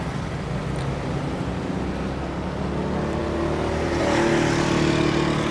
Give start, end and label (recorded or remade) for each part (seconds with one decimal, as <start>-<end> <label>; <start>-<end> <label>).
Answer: 0.0-5.5 recorded